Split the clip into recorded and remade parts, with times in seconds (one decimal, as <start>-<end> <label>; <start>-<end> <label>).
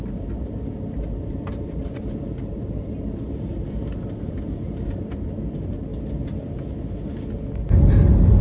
0.0-5.9 remade; 5.9-8.4 recorded